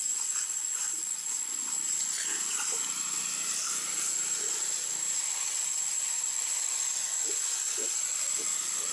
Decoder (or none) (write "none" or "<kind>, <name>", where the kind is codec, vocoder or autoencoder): none